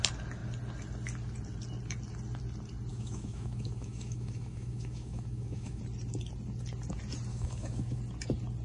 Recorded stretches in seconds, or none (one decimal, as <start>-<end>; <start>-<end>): 0.0-2.9; 5.8-7.3; 8.0-8.6